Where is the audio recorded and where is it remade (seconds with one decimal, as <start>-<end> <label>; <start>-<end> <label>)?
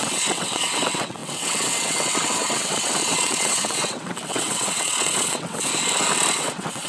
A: 0.0-5.7 remade; 5.7-6.3 recorded; 6.3-6.9 remade